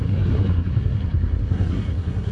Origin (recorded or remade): remade